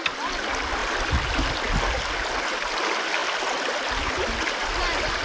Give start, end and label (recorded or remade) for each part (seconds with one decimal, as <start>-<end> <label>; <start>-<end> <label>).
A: 0.0-5.2 recorded